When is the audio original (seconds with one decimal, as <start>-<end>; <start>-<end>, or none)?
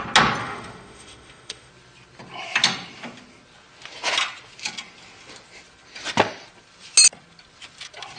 0.0-0.4; 1.7-8.2